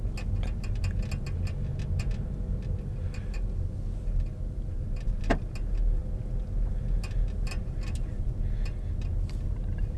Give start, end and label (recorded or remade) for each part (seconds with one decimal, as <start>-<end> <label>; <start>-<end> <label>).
0.0-10.0 recorded